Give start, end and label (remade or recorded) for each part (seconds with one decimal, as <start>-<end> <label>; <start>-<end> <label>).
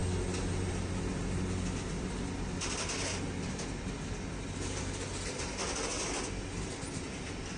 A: 0.0-7.6 recorded